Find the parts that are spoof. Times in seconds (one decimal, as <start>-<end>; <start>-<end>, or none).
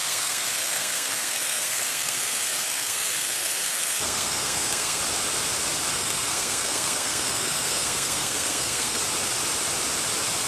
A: 0.0-5.0; 5.9-9.0